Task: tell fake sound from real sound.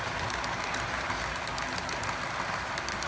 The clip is real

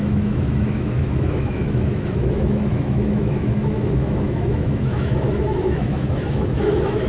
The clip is fake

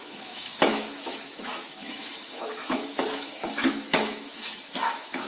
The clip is fake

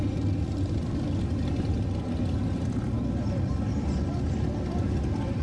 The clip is real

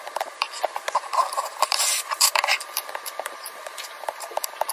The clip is fake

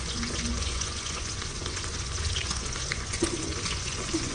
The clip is fake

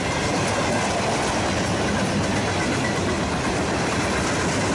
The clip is real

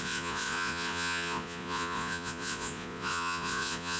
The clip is fake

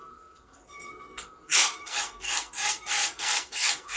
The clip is fake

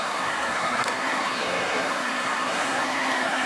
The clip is fake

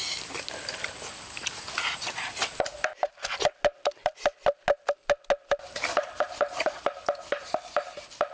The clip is real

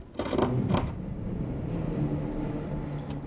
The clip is real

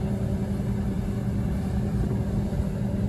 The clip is real